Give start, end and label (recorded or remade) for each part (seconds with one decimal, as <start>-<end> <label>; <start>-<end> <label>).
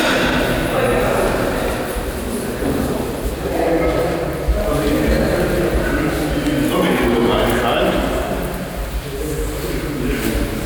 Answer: 0.0-10.7 recorded